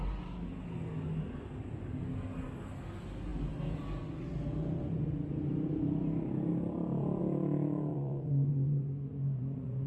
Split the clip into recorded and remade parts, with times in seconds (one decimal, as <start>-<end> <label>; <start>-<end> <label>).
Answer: 0.0-7.9 recorded; 7.9-9.9 remade